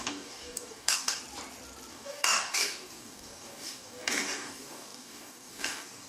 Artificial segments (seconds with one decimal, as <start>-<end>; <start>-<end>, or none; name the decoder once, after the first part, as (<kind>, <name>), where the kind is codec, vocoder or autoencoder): 0.0-1.2 (codec, DAC); 1.9-6.1